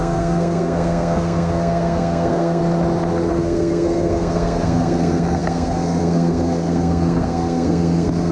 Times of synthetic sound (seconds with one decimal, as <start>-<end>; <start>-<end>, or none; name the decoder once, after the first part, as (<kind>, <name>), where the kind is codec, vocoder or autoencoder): 0.0-2.6 (codec, SNAC); 3.3-8.3